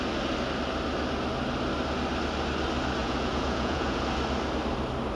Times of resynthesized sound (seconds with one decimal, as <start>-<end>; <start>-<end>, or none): 3.0-4.0

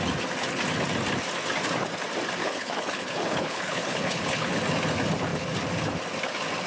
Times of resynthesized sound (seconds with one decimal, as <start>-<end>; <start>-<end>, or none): 2.4-4.6

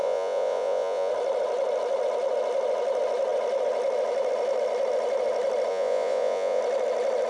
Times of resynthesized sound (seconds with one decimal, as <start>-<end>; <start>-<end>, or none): 0.0-1.1; 5.7-6.6

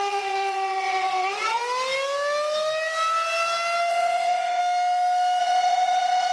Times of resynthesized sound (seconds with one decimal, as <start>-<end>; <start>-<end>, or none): 0.0-1.6; 3.9-4.6; 5.4-6.3

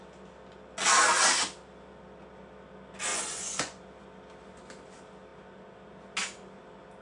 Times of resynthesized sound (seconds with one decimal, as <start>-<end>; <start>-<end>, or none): 3.1-3.8

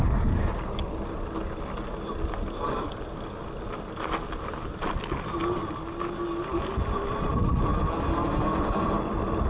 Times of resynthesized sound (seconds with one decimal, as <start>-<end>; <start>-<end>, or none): none